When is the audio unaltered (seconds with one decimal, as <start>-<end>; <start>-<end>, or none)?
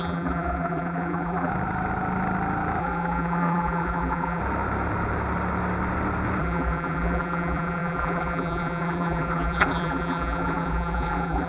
1.5-2.8; 4.4-6.4